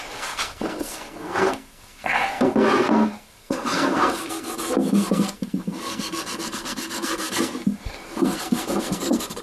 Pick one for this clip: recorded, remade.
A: remade